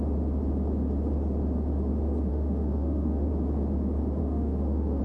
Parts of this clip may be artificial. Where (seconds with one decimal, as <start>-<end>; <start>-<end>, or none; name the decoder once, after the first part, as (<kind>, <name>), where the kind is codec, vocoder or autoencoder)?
2.3-3.3 (autoencoder, DAC-VAE); 4.2-5.0